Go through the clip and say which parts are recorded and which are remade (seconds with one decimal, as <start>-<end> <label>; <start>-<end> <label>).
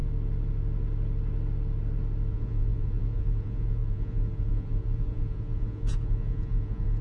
0.0-2.3 recorded; 2.3-7.0 remade